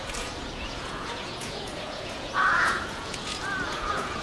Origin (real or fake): fake